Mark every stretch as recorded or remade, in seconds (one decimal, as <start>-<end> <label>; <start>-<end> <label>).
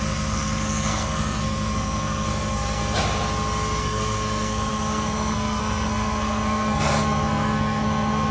0.0-2.8 remade; 2.8-3.8 recorded; 3.8-8.3 remade